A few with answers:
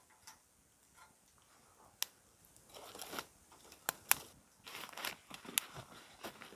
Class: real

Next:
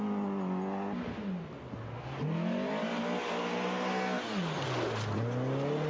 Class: real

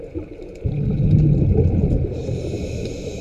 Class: real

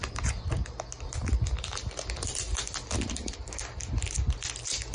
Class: real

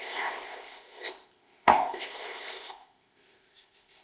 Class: fake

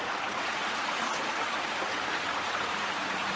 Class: fake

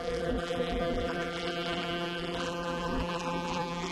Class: fake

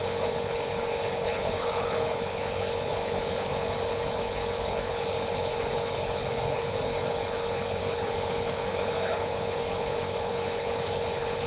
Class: fake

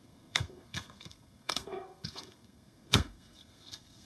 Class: fake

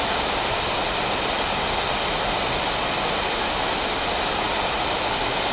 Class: real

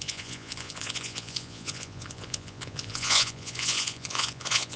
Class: fake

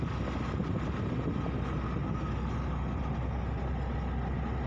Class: real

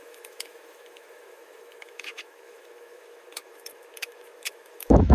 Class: fake